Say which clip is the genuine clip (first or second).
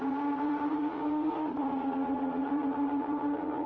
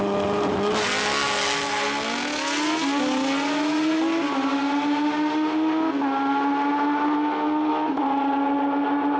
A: second